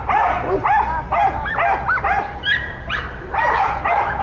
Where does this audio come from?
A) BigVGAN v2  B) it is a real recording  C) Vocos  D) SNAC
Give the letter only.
B